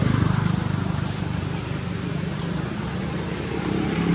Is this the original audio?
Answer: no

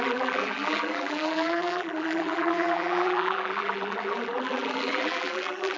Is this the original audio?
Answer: no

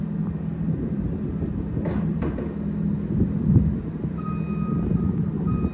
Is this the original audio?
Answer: yes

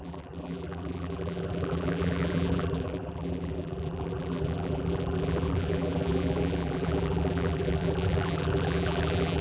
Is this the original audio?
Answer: no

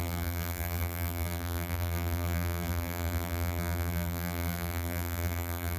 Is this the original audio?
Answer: no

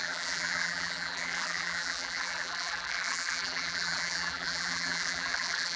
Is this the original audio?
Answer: no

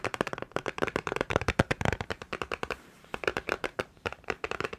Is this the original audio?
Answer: no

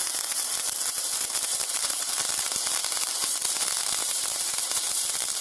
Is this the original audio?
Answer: no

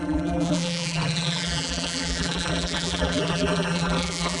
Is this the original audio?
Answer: no